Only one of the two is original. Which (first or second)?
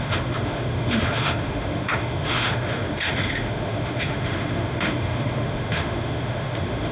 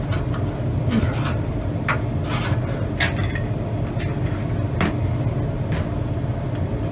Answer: second